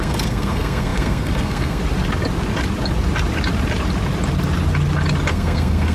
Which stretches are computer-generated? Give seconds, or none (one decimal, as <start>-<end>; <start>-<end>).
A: 0.0-1.8; 5.3-5.9